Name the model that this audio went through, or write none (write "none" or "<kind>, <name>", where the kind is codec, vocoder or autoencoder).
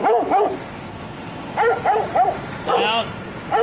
none